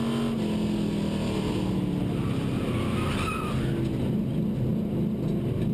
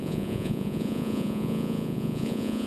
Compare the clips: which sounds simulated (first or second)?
second